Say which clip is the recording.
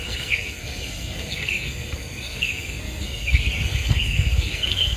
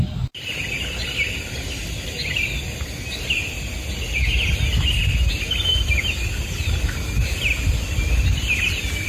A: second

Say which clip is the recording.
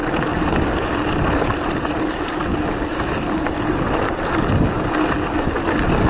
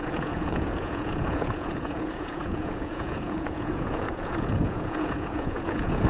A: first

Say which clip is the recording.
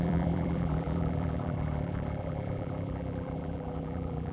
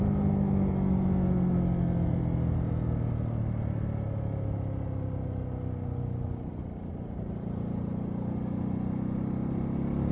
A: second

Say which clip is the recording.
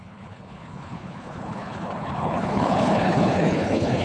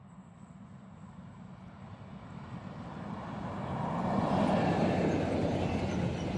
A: second